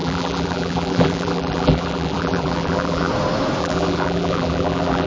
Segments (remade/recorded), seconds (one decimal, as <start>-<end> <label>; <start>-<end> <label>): 0.0-3.1 remade; 3.1-3.6 recorded; 3.6-5.1 remade